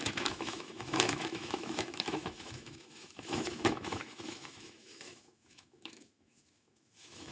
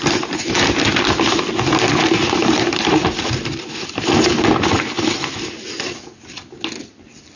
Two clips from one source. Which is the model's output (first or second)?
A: first